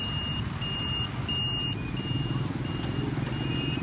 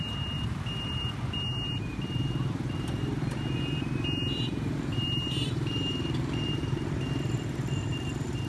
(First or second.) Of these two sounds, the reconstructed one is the second